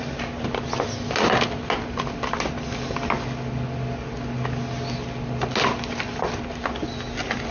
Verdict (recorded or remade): recorded